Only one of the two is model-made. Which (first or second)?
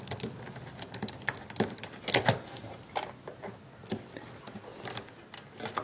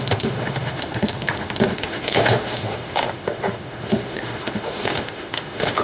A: second